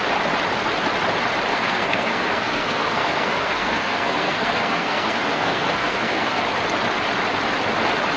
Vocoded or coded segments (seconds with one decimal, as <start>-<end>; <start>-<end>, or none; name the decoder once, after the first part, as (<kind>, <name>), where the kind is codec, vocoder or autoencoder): 1.5-6.4 (codec, SNAC)